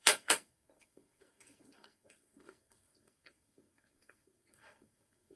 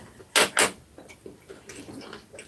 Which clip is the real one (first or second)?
second